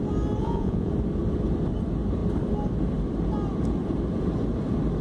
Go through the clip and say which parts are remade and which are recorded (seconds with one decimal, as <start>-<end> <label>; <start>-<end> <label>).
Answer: 0.0-0.4 recorded; 0.4-0.9 remade; 0.9-5.0 recorded